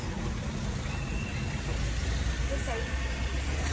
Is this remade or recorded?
recorded